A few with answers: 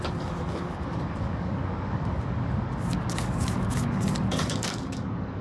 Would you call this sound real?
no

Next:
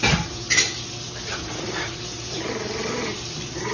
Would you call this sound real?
yes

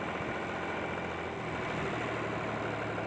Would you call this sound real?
yes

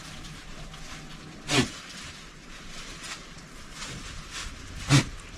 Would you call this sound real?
yes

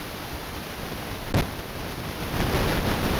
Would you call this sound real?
yes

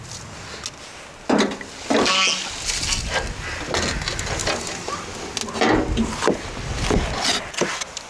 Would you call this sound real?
yes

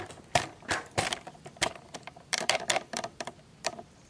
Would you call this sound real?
no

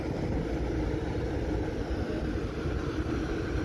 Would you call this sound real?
yes